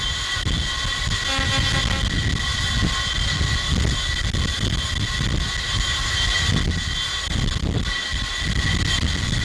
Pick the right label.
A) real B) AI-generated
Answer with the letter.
A